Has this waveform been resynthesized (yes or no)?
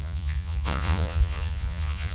yes